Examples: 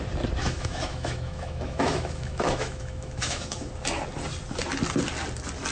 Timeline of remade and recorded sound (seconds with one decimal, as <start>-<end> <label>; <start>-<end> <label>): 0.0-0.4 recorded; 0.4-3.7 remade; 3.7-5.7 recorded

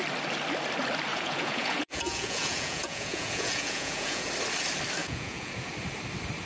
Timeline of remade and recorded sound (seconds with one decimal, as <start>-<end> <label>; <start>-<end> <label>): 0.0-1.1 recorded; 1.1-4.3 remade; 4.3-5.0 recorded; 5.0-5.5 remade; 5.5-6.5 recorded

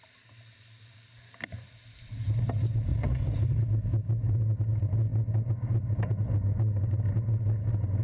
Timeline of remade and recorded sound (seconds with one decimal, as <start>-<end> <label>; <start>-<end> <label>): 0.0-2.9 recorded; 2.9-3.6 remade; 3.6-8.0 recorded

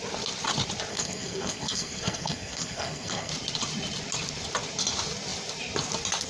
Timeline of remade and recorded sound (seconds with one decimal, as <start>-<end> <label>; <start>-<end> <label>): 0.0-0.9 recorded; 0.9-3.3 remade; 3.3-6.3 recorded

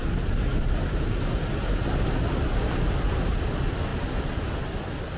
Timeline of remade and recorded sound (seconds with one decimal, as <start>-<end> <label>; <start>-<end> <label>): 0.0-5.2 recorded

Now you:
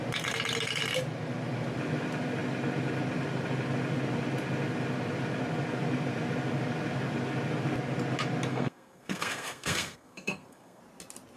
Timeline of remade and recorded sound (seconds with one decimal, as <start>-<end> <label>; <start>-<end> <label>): 0.0-8.5 recorded; 8.5-10.8 remade; 10.8-11.4 recorded

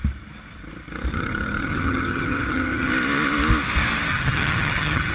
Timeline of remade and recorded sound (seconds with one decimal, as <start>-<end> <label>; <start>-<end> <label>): 0.0-1.1 recorded; 1.1-2.9 remade; 2.9-4.1 recorded; 4.1-5.1 remade